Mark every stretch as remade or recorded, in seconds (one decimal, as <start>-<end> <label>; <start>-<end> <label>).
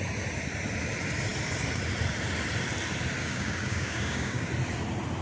0.0-3.2 recorded; 3.2-4.5 remade; 4.5-5.2 recorded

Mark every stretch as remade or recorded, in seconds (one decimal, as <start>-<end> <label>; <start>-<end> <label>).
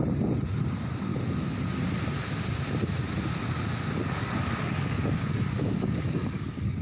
0.0-4.0 recorded; 4.0-6.8 remade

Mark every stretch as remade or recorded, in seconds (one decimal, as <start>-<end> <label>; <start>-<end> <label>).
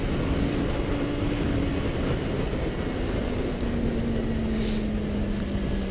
0.0-5.9 recorded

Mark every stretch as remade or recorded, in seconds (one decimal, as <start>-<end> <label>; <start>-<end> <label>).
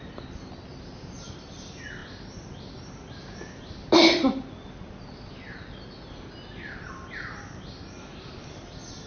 0.0-9.1 recorded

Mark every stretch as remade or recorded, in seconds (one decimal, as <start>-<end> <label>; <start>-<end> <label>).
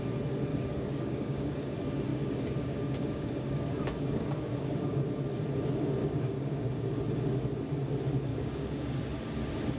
0.0-0.5 recorded; 0.5-1.7 remade; 1.7-2.1 recorded; 2.1-5.1 remade; 5.1-6.0 recorded; 6.0-6.9 remade; 6.9-8.3 recorded; 8.3-9.0 remade; 9.0-9.8 recorded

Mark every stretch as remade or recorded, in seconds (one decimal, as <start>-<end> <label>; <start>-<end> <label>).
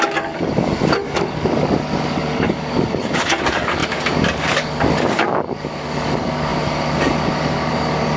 0.0-8.2 remade